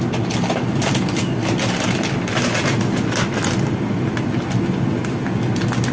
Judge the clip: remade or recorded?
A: recorded